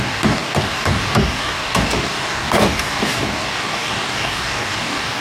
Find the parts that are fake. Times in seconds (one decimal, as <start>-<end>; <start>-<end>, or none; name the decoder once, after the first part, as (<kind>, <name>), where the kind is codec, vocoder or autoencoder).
0.0-5.2 (codec, DAC)